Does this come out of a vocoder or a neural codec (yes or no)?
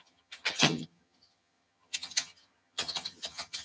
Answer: yes